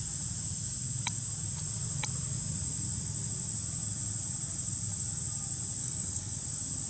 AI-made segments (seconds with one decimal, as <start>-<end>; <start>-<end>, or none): 5.8-6.4